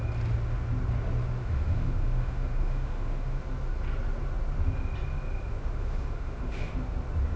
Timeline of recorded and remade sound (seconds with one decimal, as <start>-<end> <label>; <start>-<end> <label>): 0.0-1.4 recorded; 1.4-3.4 remade; 3.4-5.5 recorded; 5.5-6.7 remade; 6.7-7.4 recorded